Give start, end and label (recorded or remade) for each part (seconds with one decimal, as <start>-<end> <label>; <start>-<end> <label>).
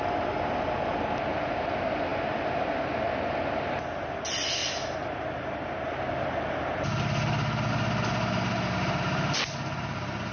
0.0-10.3 recorded